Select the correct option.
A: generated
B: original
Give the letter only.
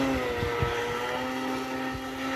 B